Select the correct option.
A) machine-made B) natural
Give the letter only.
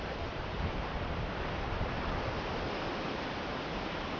B